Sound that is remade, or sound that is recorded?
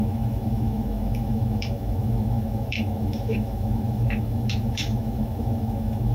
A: remade